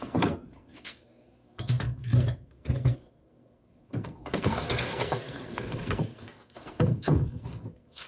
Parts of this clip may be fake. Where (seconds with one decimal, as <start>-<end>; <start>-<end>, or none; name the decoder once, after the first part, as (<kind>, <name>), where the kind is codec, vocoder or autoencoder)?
0.0-8.1 (codec, SNAC)